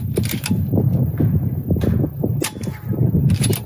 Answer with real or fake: real